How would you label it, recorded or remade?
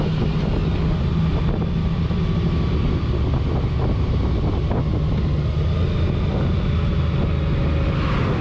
recorded